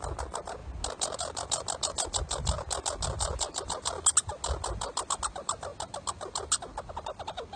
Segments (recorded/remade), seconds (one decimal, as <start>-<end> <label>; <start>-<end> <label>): 0.0-7.6 recorded